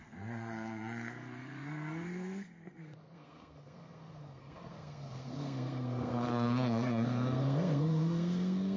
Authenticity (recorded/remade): remade